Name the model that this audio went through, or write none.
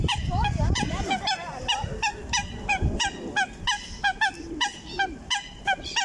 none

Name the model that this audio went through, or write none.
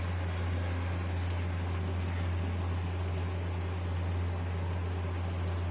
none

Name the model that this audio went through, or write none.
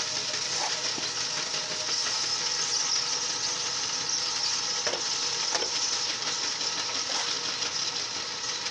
none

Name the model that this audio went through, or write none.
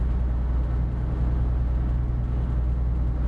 none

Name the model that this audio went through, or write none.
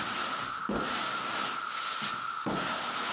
none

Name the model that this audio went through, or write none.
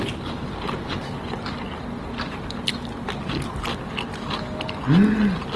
none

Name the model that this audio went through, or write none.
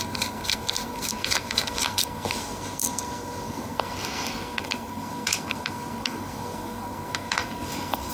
codec, SNAC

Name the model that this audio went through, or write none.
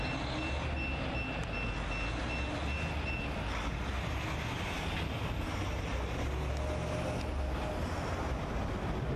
none